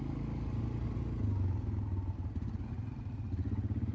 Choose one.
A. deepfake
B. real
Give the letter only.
B